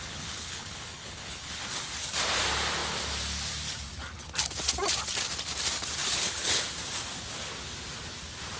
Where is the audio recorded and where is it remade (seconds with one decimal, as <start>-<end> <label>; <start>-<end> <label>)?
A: 0.0-1.6 remade; 1.6-6.0 recorded; 6.0-6.6 remade; 6.6-8.6 recorded

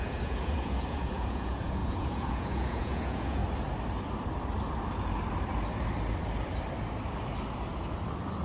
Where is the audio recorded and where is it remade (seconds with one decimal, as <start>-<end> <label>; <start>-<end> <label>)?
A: 0.0-3.4 remade; 3.4-8.4 recorded

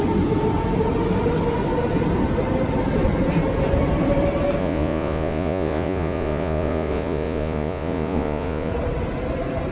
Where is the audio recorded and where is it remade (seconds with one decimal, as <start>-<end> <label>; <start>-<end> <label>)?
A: 0.0-4.6 recorded; 4.6-8.7 remade; 8.7-9.7 recorded

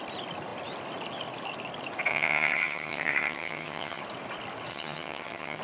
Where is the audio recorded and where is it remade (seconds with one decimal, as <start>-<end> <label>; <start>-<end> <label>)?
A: 0.0-2.1 recorded; 2.1-4.0 remade; 4.0-4.7 recorded; 4.7-5.6 remade

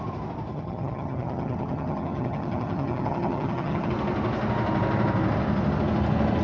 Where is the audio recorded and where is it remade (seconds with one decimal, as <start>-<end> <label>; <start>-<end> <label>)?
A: 0.0-0.5 recorded; 0.5-3.9 remade; 3.9-6.4 recorded

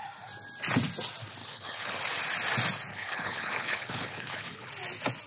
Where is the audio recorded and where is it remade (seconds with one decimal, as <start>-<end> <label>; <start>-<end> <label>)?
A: 0.0-1.4 recorded; 1.4-2.0 remade; 2.0-2.9 recorded; 2.9-4.7 remade; 4.7-5.3 recorded

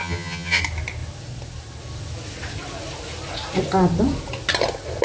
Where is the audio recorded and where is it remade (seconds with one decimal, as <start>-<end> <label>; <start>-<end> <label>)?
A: 0.0-0.6 remade; 0.6-5.0 recorded

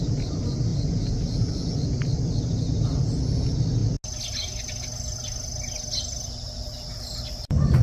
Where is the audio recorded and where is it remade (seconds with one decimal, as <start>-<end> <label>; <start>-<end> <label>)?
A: 0.0-7.8 recorded